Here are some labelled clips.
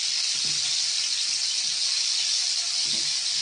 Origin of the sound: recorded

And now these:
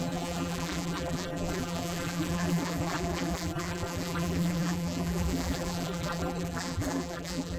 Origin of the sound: remade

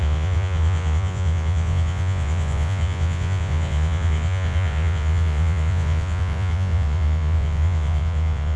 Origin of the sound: remade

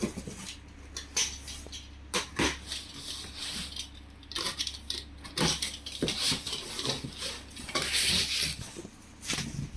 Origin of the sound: recorded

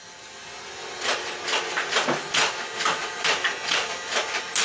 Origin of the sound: recorded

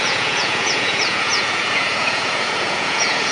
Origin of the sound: remade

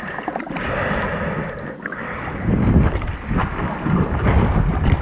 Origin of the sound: recorded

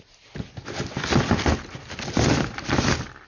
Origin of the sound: recorded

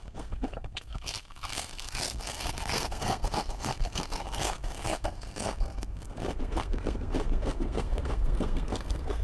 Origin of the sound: remade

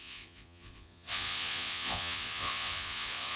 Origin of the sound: remade